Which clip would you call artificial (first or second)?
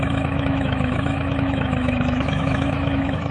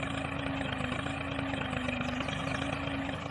first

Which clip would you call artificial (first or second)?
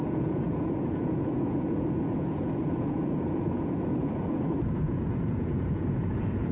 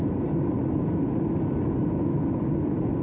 first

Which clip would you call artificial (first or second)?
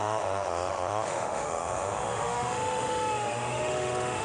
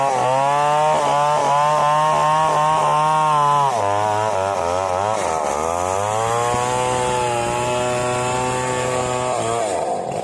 first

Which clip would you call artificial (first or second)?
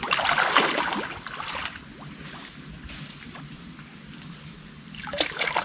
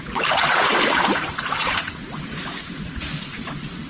second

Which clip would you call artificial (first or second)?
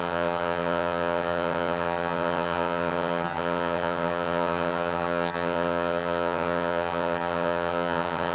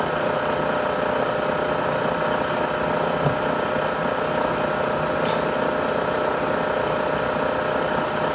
first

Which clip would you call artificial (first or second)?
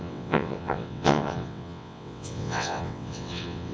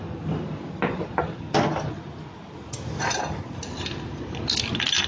first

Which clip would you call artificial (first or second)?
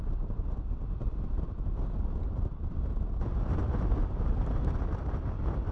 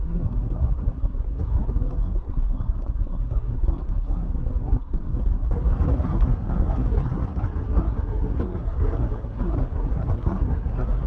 second